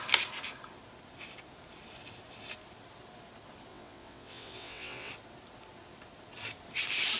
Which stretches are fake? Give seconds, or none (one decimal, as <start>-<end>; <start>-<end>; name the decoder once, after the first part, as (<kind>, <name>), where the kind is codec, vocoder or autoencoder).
3.7-5.1 (vocoder, WaveNeXt)